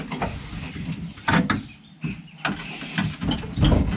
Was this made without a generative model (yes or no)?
yes